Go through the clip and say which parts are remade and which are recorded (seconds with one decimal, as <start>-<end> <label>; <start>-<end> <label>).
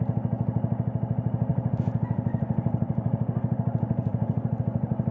0.0-1.5 recorded; 1.5-4.6 remade; 4.6-5.1 recorded